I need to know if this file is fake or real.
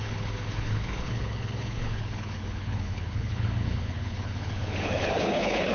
fake